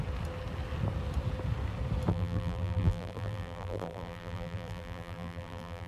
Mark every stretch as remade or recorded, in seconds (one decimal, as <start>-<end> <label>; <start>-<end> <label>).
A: 0.0-2.1 recorded; 2.1-5.9 remade